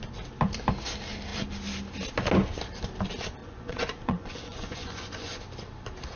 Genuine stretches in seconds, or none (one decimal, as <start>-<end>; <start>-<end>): 0.0-3.4; 5.4-6.2

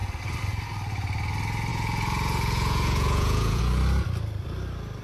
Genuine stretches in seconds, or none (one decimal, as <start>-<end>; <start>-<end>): 0.0-1.7; 3.6-5.0

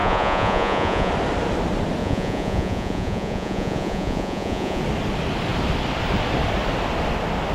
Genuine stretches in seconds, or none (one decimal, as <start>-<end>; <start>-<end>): 1.1-2.0; 4.8-7.5

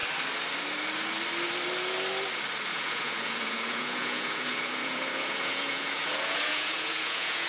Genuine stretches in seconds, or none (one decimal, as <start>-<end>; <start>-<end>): 0.0-2.7